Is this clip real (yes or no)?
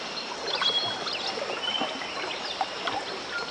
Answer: yes